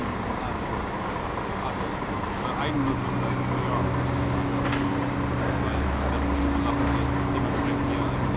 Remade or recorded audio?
recorded